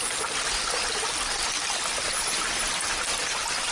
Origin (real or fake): real